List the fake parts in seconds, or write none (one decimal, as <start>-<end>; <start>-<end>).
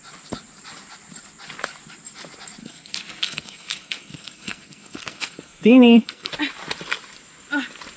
2.6-6.3